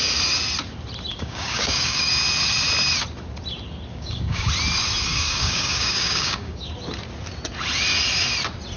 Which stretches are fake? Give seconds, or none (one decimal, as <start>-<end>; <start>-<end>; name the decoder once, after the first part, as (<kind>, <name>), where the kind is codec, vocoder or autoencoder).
1.1-2.1 (codec, DAC); 3.9-4.5; 5.1-6.7